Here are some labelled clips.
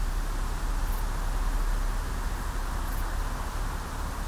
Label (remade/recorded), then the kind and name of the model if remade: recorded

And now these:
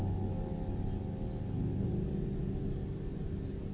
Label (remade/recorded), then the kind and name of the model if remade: recorded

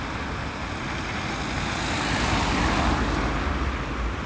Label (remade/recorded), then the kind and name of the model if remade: recorded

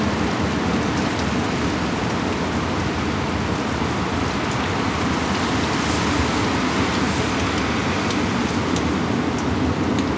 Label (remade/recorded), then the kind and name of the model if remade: recorded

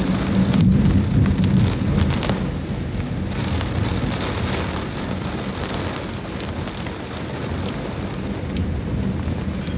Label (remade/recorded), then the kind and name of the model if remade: recorded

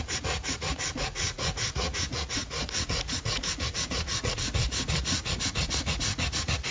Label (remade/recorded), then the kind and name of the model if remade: remade, vocoder, Vocos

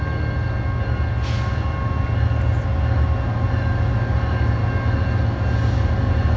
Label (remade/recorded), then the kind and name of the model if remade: recorded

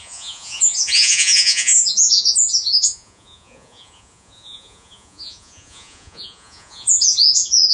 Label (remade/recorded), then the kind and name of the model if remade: remade, vocoder, Vocos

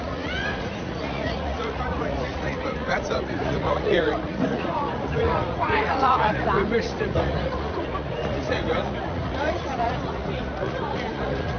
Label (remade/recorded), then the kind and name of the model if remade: remade, vocoder, Vocos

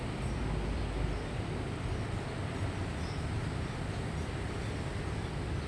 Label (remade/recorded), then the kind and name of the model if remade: recorded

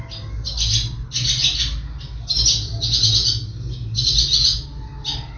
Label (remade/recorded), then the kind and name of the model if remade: recorded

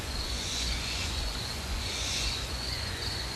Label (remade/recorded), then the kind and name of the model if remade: remade, vocoder, Vocos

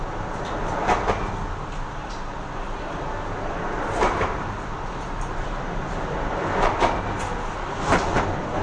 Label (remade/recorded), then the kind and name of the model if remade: recorded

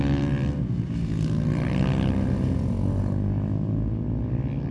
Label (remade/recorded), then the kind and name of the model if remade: recorded